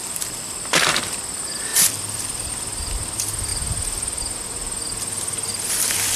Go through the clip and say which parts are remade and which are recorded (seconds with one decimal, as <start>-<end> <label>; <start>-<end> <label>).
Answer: 0.0-1.7 recorded; 1.7-2.5 remade; 2.5-3.5 recorded; 3.5-4.2 remade; 4.2-5.5 recorded; 5.5-6.2 remade